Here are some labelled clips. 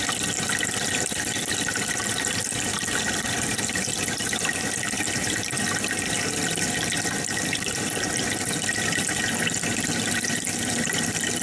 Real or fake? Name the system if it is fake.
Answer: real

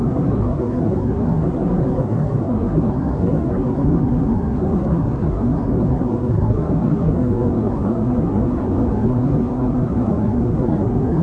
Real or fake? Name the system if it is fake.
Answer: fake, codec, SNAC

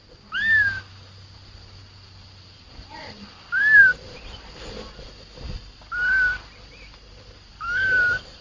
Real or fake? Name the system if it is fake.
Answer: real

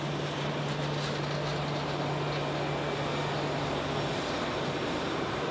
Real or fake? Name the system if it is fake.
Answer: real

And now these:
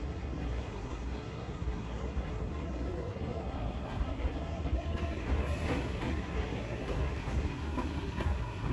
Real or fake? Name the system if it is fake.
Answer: fake, codec, SNAC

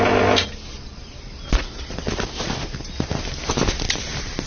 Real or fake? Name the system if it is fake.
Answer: real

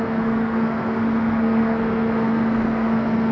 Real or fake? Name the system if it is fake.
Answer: fake, codec, SNAC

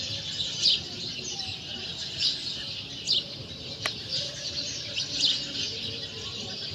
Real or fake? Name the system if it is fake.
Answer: real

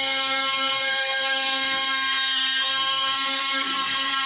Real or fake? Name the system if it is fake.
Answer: fake, codec, SNAC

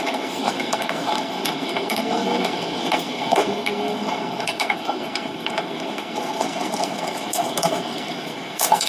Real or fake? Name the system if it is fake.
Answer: fake, codec, SNAC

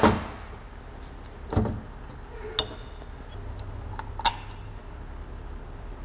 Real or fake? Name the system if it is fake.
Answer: real